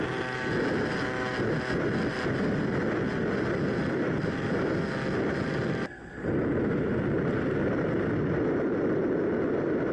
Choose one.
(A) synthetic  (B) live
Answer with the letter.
B